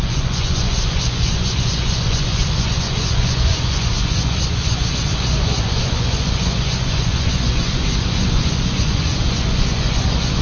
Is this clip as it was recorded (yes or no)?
no